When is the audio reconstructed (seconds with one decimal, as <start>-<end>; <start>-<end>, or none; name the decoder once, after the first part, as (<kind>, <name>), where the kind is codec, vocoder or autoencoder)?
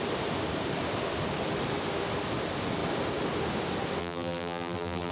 4.0-5.1 (vocoder, BigVGAN v2)